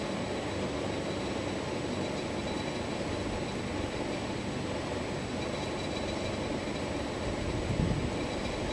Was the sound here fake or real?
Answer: real